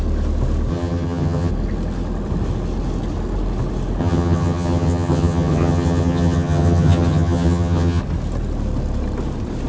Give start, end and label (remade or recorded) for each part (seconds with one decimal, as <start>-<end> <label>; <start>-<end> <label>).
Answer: 0.0-0.7 recorded; 0.7-1.5 remade; 1.5-4.0 recorded; 4.0-8.0 remade; 8.0-9.7 recorded